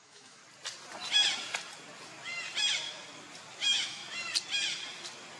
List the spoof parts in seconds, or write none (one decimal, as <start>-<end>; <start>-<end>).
0.0-0.4; 3.6-4.0